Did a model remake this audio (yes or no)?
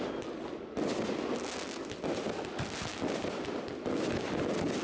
no